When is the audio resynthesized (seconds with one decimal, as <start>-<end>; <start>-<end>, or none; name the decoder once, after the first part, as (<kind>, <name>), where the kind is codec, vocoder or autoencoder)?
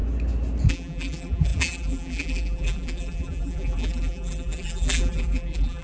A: 0.7-5.8 (vocoder, BigVGAN v2)